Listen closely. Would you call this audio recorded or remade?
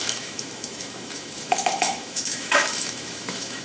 remade